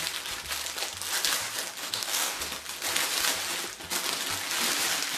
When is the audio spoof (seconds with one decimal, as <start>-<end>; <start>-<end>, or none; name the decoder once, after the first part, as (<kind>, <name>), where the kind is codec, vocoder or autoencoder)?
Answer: 1.8-2.4 (codec, DAC)